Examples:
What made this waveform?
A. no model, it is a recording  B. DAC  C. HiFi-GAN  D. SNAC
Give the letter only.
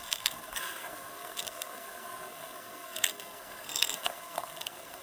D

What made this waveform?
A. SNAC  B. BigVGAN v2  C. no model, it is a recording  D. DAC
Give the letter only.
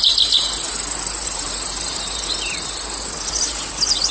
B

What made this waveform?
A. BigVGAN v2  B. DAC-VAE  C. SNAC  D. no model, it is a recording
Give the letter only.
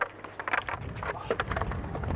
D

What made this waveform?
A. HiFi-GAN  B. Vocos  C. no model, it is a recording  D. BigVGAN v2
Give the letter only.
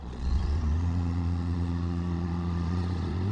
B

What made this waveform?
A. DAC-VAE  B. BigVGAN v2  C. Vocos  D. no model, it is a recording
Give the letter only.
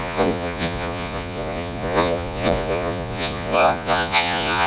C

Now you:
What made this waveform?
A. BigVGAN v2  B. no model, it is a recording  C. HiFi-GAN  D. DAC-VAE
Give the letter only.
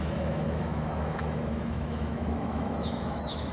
D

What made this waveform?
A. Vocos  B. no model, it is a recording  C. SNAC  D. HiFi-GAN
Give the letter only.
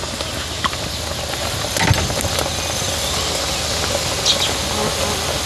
B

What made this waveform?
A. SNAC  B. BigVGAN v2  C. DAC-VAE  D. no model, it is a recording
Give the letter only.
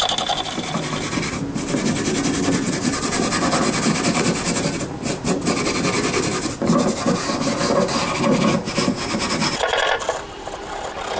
B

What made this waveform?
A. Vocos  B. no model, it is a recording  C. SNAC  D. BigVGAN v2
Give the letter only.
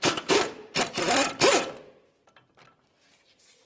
B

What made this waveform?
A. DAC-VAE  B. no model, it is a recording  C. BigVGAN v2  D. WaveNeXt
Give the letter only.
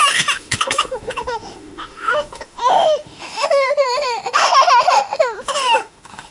A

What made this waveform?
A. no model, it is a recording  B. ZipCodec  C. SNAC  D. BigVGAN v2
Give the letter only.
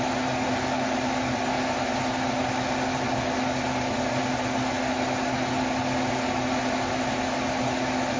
A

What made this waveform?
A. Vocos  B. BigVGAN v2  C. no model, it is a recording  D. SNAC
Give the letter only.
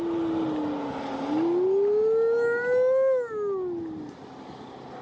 C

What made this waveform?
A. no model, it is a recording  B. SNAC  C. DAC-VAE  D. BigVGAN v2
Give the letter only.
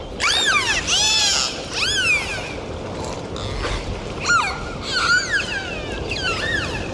A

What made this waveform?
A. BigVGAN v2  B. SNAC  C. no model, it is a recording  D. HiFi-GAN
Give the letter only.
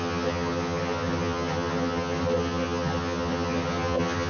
D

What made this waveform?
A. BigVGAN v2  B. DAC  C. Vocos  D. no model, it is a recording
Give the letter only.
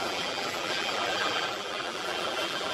A